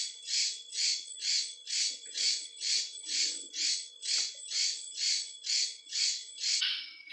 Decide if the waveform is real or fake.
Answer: fake